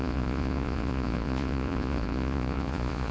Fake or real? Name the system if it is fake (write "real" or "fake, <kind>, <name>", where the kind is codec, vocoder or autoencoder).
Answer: fake, vocoder, Vocos